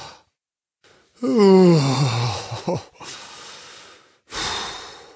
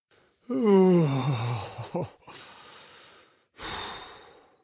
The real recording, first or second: first